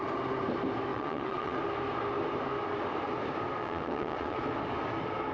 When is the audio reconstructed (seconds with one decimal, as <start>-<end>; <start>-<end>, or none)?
0.9-1.6; 3.6-4.4